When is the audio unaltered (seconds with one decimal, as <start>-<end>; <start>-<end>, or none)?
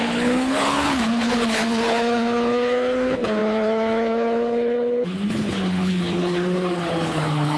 none